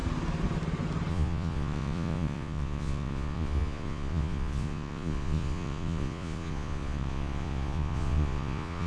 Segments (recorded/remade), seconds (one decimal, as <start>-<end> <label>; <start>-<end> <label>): 0.0-1.1 recorded; 1.1-8.9 remade